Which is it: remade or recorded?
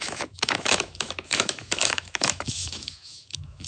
remade